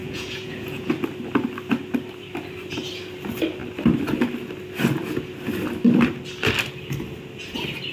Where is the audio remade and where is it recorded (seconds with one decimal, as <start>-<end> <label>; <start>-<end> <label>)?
0.0-0.9 remade; 0.9-7.9 recorded

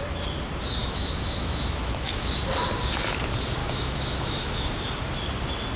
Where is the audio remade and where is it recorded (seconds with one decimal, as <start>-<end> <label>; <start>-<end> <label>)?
0.0-0.8 recorded; 0.8-2.4 remade; 2.4-3.6 recorded; 3.6-4.7 remade; 4.7-5.8 recorded